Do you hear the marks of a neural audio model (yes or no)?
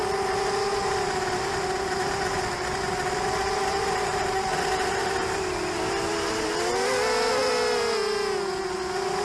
no